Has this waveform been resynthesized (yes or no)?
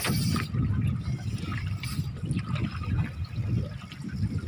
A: no